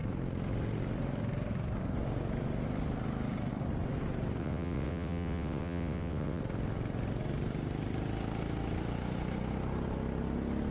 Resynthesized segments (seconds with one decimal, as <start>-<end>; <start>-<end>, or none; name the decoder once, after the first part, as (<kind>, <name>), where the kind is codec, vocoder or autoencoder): 4.4-6.4 (vocoder, WaveNeXt)